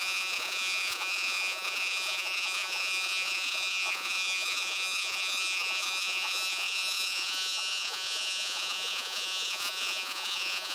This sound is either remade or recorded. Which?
remade